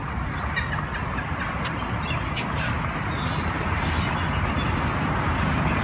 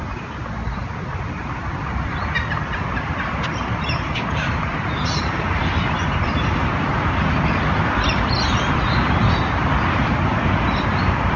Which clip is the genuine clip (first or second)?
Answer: first